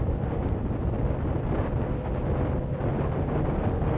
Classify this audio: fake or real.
real